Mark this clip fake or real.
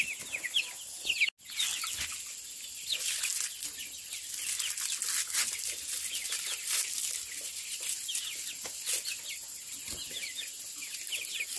real